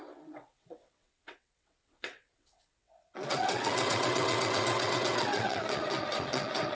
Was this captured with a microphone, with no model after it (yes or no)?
no